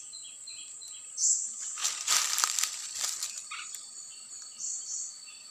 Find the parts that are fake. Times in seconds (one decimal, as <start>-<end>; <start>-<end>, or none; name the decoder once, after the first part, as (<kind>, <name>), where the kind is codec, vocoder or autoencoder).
1.8-5.1 (vocoder, BigVGAN v2)